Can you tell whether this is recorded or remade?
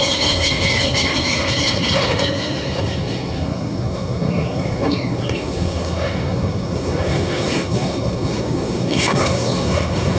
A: remade